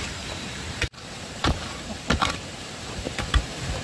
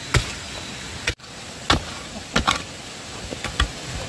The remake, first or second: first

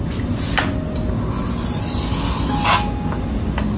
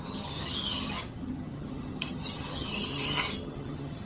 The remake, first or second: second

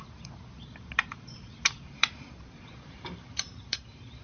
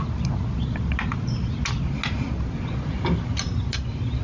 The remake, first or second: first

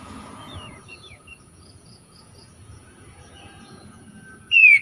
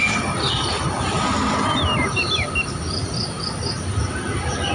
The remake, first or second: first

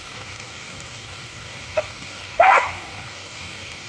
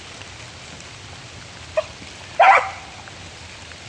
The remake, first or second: first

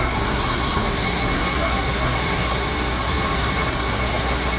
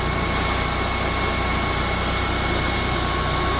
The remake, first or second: first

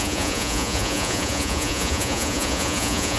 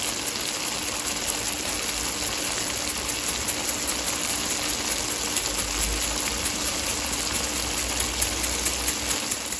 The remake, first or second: first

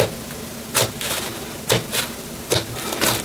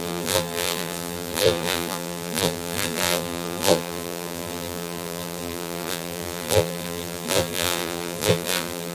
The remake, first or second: second